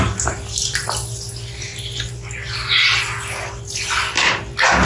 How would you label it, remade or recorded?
recorded